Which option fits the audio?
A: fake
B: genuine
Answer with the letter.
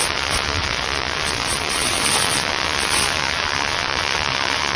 A